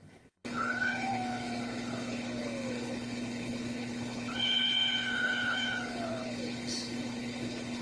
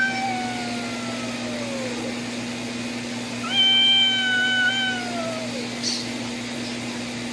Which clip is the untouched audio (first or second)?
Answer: second